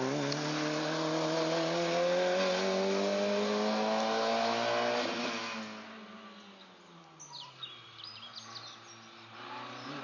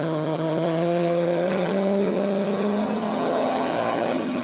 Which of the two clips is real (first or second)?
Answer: first